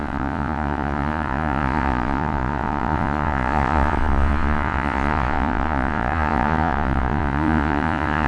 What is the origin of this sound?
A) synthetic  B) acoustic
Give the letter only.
A